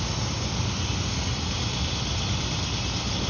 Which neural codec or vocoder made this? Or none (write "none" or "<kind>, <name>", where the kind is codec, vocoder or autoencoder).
none